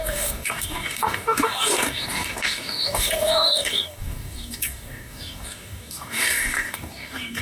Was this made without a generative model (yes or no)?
no